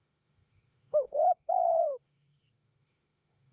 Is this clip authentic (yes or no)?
no